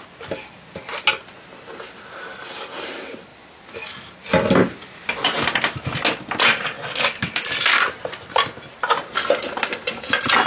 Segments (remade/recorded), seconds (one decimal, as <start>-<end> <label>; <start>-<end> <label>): 0.0-10.5 recorded